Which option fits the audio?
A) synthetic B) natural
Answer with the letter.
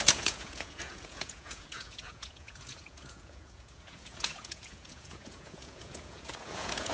A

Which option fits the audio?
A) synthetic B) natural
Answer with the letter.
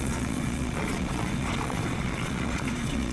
A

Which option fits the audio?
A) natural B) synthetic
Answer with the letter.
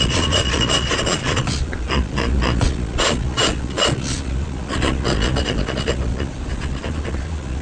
B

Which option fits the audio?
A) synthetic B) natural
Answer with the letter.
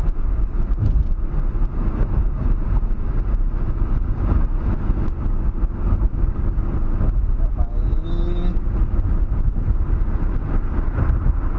B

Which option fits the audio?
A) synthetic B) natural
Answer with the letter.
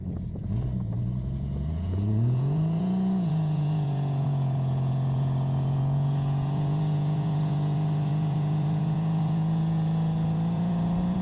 A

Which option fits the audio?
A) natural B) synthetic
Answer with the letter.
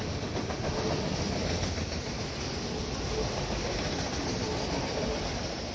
A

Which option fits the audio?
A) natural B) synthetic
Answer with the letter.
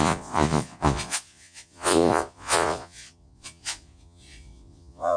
B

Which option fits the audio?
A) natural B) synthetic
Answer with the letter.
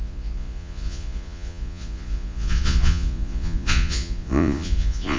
B